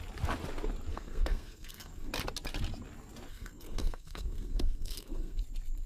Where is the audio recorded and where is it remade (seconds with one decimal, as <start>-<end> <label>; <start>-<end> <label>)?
0.0-0.9 recorded; 0.9-2.1 remade; 2.1-3.3 recorded; 3.3-5.4 remade; 5.4-5.9 recorded